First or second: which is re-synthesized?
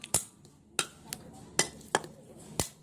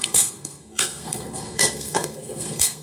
second